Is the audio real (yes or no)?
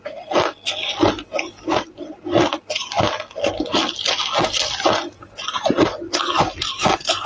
yes